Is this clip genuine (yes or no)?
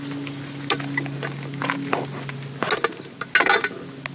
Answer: yes